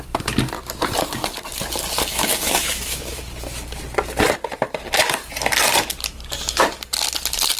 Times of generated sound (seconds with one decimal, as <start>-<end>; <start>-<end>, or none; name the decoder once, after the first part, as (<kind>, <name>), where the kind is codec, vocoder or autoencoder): 2.1-3.2 (autoencoder, DAC-VAE)